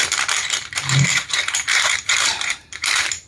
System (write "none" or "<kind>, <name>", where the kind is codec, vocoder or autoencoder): vocoder, BigVGAN v2